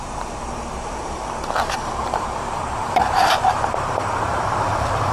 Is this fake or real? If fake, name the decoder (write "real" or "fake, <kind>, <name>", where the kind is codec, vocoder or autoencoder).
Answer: fake, vocoder, BigVGAN v2